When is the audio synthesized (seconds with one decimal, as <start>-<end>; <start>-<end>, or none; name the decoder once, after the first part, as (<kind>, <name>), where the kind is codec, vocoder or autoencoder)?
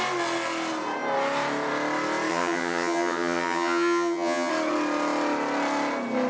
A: 2.3-4.5 (vocoder, HiFi-GAN)